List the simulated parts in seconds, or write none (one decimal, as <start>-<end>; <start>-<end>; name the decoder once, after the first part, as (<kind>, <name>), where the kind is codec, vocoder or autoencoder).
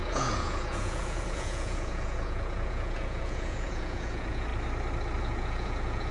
0.0-4.5 (vocoder, Vocos); 5.2-6.1